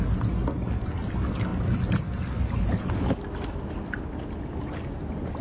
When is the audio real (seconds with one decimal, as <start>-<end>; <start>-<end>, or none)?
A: 0.0-5.4